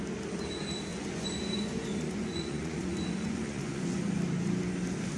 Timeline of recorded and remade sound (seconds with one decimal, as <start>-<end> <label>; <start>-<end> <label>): 0.0-0.9 recorded; 0.9-4.0 remade; 4.0-5.2 recorded